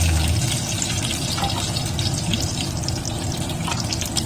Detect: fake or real real